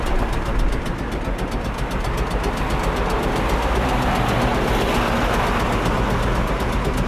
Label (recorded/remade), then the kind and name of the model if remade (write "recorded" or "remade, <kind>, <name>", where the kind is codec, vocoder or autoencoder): recorded